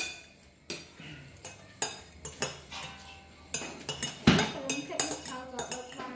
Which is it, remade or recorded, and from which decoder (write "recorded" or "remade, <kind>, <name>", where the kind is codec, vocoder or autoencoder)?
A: recorded